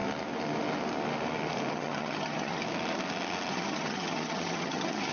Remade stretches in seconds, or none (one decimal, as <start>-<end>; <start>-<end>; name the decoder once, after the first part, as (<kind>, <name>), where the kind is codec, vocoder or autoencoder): 1.7-2.6 (vocoder, HiFi-GAN); 3.5-5.1